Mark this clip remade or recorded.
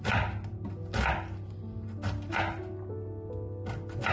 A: recorded